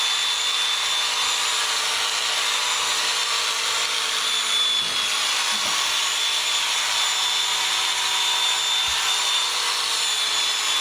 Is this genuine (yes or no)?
yes